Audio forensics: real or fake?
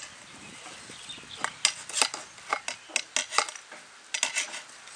real